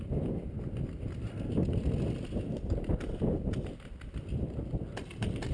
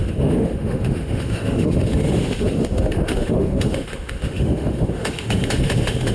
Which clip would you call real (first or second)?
first